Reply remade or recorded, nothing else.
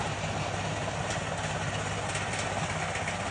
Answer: recorded